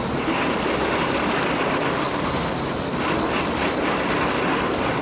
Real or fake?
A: real